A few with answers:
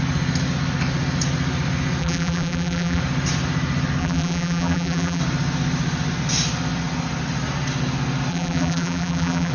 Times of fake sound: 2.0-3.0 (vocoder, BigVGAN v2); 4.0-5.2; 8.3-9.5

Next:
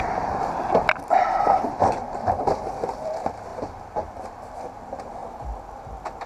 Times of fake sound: 0.0-3.5 (vocoder, BigVGAN v2); 4.6-5.2

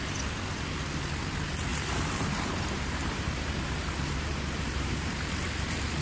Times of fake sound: 1.7-5.3 (vocoder, BigVGAN v2)

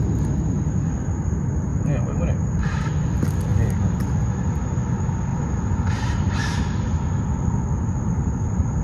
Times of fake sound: 1.7-2.8 (vocoder, BigVGAN v2); 5.3-6.6

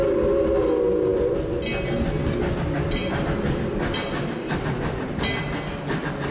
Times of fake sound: none